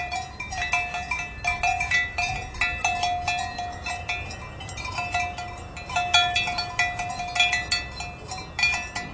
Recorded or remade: recorded